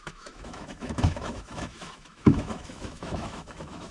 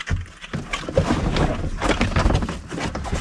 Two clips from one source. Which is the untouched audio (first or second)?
second